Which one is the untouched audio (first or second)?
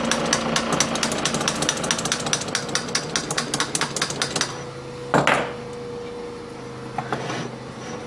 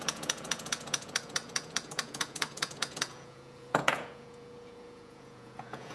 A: first